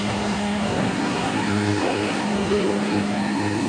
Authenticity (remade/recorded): remade